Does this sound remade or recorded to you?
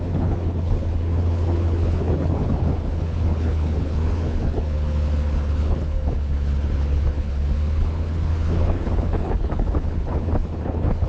remade